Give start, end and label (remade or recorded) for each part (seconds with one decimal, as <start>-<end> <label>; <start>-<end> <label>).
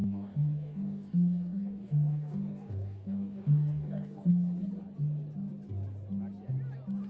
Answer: 0.0-4.3 remade; 4.3-7.1 recorded